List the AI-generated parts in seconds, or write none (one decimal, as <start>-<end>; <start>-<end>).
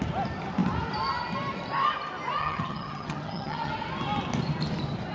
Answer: 2.4-3.7